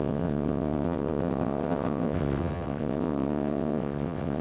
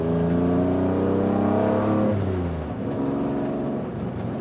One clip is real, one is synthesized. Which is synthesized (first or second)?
first